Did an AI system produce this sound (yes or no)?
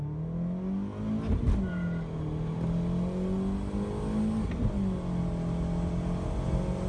no